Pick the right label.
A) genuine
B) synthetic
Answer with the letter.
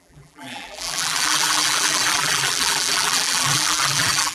B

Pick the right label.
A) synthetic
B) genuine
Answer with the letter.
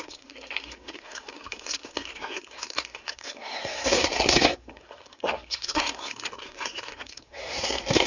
A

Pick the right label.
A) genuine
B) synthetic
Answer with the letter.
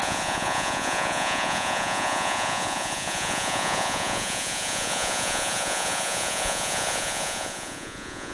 B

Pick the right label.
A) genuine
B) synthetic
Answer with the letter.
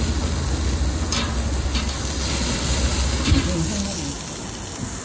A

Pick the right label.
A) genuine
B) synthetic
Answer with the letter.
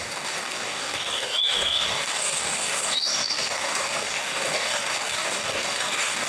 B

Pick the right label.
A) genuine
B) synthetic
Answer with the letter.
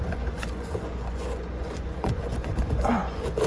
B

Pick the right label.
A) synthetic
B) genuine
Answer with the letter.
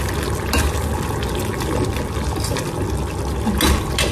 B